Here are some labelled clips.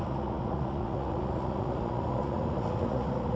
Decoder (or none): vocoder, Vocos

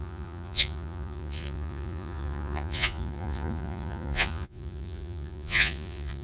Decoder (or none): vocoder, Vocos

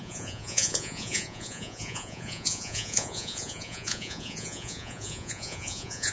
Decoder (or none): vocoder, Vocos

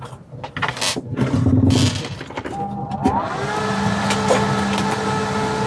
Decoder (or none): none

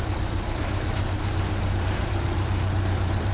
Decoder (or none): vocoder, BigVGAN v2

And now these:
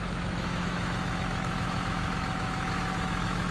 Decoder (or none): autoencoder, DAC-VAE